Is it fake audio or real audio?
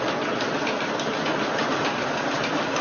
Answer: real